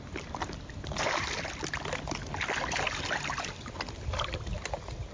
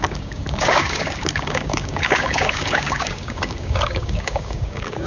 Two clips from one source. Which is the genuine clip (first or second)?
first